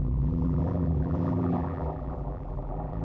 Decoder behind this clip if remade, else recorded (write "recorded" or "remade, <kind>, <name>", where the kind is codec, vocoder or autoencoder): remade, vocoder, BigVGAN v2